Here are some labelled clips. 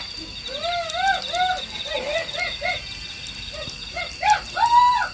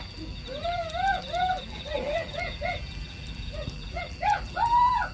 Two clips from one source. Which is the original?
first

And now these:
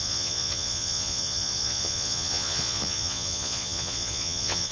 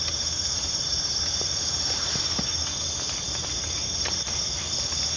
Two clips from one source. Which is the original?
second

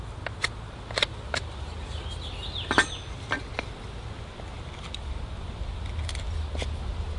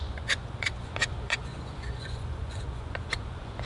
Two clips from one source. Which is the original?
first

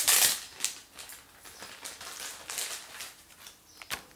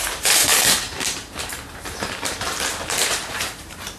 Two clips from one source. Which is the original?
first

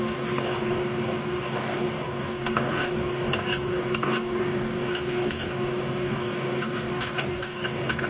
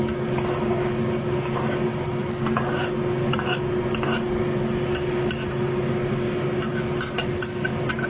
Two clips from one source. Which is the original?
second